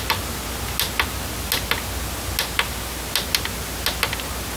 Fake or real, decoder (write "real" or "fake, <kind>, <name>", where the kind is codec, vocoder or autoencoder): real